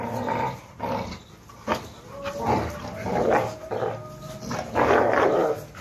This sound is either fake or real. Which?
real